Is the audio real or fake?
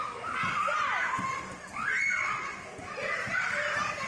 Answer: real